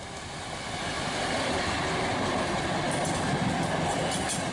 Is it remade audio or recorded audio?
recorded